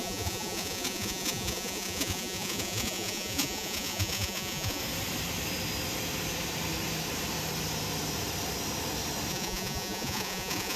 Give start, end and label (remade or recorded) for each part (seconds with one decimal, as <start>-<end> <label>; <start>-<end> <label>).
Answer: 0.0-4.8 remade; 4.8-9.3 recorded; 9.3-10.8 remade